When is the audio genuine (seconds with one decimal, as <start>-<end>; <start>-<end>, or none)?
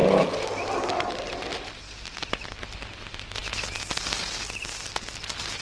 0.0-5.6